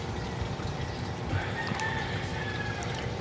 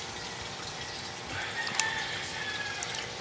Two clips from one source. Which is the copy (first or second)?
first